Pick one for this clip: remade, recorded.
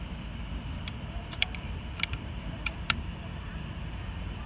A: remade